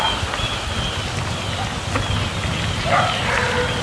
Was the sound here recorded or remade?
recorded